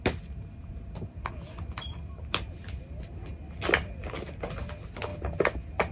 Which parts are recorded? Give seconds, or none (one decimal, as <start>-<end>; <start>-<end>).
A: 0.0-5.9

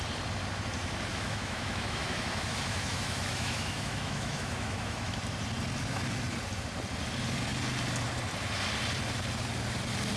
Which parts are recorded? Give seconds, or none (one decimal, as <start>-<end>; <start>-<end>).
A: 0.0-1.1; 5.2-10.2